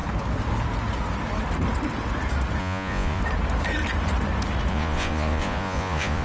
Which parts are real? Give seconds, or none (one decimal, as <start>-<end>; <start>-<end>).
0.0-2.6; 3.2-4.7